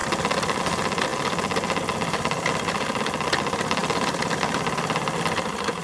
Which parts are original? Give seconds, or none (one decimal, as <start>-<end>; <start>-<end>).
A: 0.0-5.8